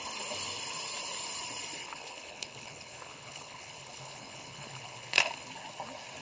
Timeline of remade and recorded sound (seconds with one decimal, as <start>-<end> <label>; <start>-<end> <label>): 0.0-1.8 recorded; 1.8-5.5 remade; 5.5-6.2 recorded